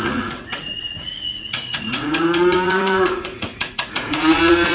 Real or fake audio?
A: fake